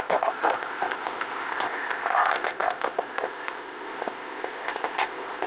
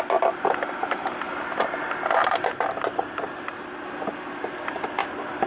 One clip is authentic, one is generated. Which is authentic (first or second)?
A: second